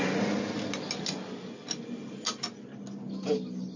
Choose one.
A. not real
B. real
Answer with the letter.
B